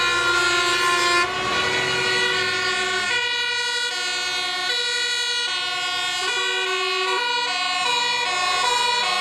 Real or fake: real